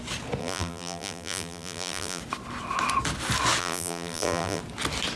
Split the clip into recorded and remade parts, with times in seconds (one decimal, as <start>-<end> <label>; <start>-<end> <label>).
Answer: 0.0-0.4 recorded; 0.4-2.2 remade; 2.2-3.6 recorded; 3.6-4.6 remade; 4.6-5.2 recorded